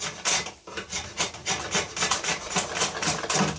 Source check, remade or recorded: recorded